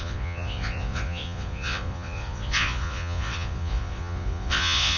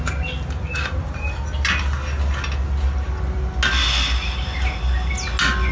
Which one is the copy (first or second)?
first